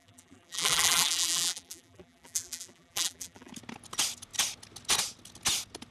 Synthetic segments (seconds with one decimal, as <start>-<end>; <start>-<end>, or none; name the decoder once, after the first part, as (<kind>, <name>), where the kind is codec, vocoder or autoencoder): 0.0-3.5 (vocoder, BigVGAN v2)